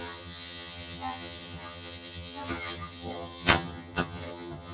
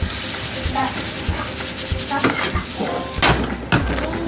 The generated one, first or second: first